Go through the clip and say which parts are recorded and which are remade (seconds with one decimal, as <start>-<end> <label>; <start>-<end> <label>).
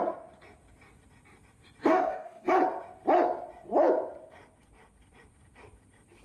0.0-1.8 recorded; 1.8-2.5 remade; 2.5-6.2 recorded